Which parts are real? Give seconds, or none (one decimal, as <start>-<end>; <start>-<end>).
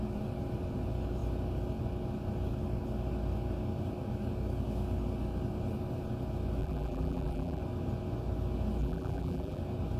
0.0-6.6; 7.6-8.8; 9.6-10.0